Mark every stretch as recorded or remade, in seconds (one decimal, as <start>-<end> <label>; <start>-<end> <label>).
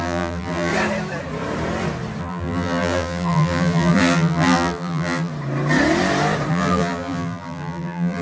0.0-0.7 remade; 0.7-2.2 recorded; 2.2-5.3 remade; 5.3-6.5 recorded; 6.5-8.2 remade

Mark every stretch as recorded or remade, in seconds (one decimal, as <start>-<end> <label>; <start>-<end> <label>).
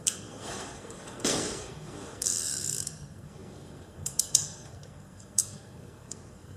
0.0-6.6 remade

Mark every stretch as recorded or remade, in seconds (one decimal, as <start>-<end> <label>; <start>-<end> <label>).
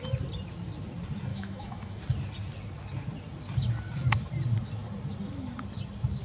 0.0-1.3 recorded; 1.3-2.0 remade; 2.0-6.2 recorded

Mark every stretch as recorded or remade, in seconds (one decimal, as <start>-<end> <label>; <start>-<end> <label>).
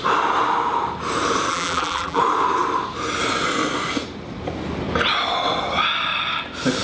0.0-1.5 recorded; 1.5-2.2 remade; 2.2-6.8 recorded